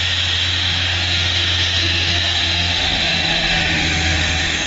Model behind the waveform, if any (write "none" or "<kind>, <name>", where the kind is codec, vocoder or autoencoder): autoencoder, DAC-VAE